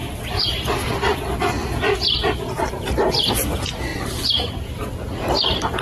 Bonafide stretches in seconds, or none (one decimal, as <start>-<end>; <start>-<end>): 0.0-5.8